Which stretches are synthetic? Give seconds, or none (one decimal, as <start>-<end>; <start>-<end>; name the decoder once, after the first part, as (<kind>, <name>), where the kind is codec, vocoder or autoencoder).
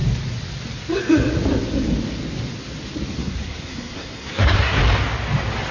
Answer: 3.2-4.8 (codec, SNAC)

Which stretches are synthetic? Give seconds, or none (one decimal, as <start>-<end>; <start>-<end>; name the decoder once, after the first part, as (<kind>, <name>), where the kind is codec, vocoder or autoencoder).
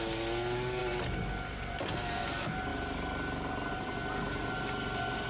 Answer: none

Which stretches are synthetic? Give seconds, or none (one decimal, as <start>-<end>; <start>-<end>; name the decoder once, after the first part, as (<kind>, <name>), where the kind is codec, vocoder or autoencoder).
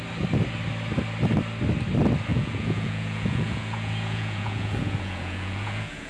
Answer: 2.3-6.1 (vocoder, Vocos)